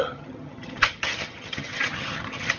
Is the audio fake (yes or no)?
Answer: yes